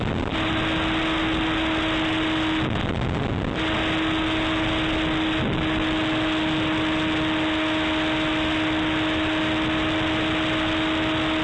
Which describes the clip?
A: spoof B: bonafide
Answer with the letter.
B